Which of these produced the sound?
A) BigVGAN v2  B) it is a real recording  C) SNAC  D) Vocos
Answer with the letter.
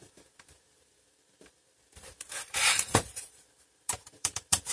A